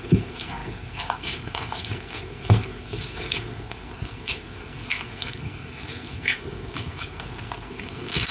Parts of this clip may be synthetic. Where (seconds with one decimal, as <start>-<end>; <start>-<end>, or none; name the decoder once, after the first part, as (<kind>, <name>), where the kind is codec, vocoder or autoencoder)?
0.0-8.3 (codec, SNAC)